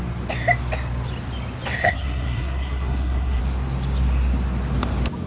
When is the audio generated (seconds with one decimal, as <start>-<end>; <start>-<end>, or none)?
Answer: 1.8-3.4